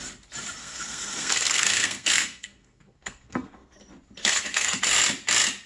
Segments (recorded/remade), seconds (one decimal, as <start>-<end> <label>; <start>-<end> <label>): 0.0-0.6 recorded; 0.6-3.8 remade; 3.8-4.2 recorded; 4.2-4.8 remade; 4.8-5.7 recorded